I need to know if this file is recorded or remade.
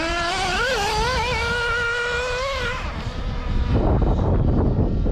recorded